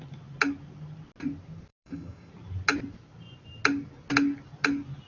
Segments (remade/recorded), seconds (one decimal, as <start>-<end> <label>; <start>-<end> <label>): 0.0-1.7 recorded; 1.7-2.3 remade; 2.3-5.1 recorded